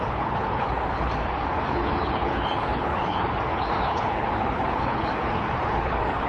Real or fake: fake